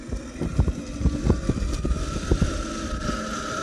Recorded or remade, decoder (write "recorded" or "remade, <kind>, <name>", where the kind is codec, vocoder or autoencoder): recorded